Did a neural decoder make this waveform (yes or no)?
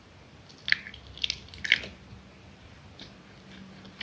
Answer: no